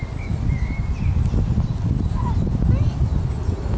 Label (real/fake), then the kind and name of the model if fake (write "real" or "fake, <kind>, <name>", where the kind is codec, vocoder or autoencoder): real